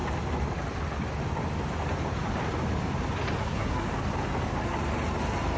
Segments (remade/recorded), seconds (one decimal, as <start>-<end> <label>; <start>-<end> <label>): 0.0-3.4 recorded; 3.4-3.9 remade; 3.9-5.6 recorded